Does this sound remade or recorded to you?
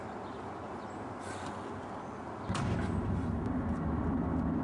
recorded